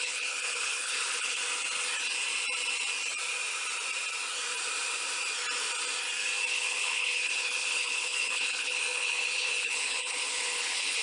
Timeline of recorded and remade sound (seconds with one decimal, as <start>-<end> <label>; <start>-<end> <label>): 0.0-1.4 remade; 1.4-6.5 recorded; 6.5-11.0 remade